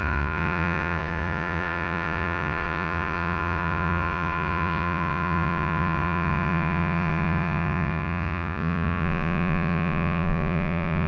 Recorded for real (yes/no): no